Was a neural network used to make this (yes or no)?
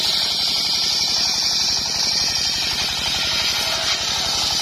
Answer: no